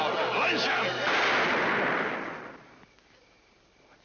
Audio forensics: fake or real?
real